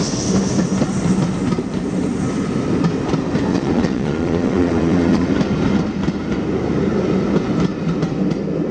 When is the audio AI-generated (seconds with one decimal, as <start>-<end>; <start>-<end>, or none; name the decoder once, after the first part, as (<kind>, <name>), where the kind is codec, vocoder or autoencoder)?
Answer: 3.5-5.3 (vocoder, Vocos)